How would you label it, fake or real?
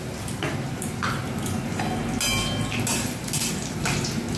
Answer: real